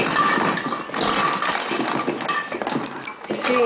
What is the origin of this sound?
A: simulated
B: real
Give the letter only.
B